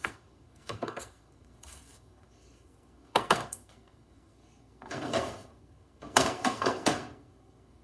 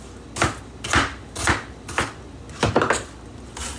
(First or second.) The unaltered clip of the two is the second